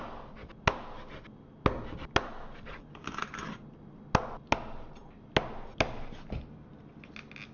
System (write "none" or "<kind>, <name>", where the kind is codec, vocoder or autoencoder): none